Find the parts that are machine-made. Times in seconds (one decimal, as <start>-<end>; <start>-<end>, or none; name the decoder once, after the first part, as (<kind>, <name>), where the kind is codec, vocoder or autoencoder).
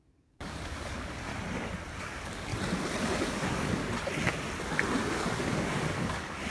0.0-1.3 (codec, DAC); 2.0-2.5; 3.0-3.8; 5.0-6.5